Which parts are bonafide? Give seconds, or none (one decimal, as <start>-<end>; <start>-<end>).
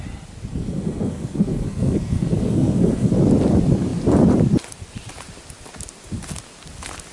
0.0-0.5; 3.1-7.1